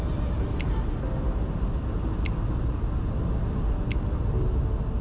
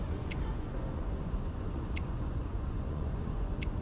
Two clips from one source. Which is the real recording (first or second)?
first